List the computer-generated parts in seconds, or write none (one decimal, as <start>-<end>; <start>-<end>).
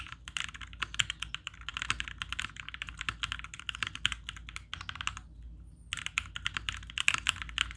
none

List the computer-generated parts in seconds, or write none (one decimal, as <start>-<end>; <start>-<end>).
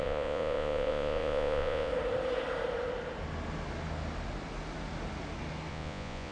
0.0-1.9; 5.7-6.3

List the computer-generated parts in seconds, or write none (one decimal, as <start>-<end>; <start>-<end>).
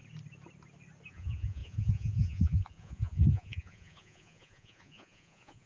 1.1-5.7